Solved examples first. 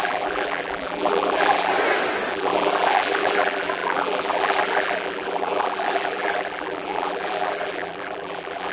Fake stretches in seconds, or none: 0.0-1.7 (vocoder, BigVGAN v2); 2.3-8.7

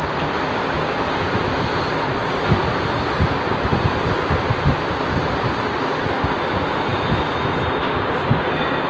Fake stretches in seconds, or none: 3.7-5.2 (vocoder, BigVGAN v2)

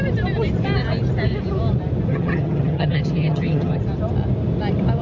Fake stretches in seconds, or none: 2.1-3.8 (vocoder, HiFi-GAN)

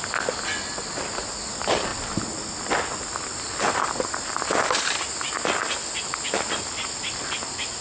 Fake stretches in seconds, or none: none

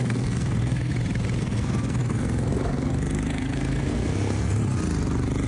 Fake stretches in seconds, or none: 0.0-0.9 (codec, SNAC); 1.4-4.6

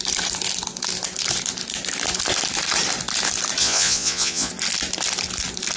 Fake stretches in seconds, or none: 3.6-4.5 (vocoder, Vocos)